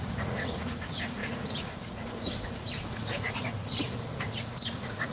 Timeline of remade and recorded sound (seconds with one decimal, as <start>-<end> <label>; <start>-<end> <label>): 0.0-5.1 remade